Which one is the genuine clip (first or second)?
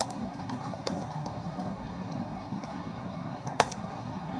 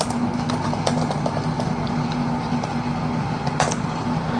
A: second